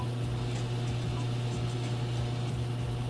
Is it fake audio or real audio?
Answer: real